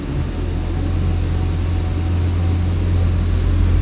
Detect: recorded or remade recorded